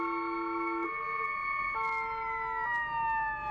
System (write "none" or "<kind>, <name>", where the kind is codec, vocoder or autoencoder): none